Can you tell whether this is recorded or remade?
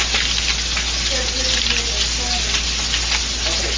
recorded